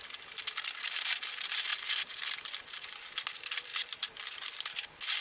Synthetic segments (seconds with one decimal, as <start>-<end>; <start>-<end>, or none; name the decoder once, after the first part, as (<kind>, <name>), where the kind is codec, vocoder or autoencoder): 1.7-3.1 (vocoder, BigVGAN v2); 3.7-4.7

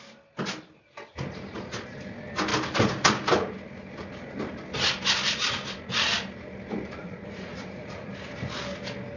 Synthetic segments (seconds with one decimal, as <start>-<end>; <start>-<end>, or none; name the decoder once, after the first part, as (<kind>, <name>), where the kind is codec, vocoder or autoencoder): 7.0-8.1 (vocoder, Vocos)

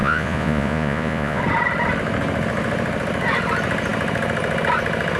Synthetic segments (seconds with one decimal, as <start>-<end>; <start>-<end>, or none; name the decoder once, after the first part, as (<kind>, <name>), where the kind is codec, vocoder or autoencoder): 0.0-1.4 (vocoder, Vocos)

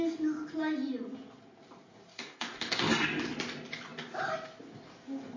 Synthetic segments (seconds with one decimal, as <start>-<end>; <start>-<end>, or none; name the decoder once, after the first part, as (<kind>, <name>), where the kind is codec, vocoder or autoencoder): 2.1-2.7 (codec, DAC)